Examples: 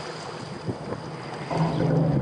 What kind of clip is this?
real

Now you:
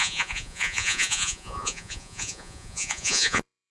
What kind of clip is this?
fake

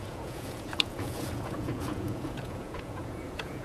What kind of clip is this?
fake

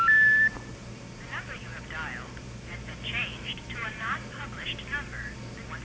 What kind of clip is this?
real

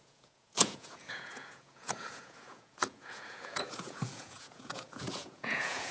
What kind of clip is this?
fake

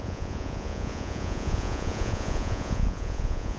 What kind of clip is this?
fake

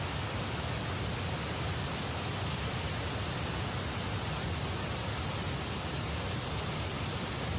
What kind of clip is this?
real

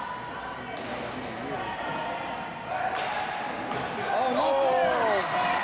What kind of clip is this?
real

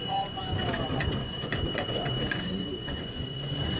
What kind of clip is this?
fake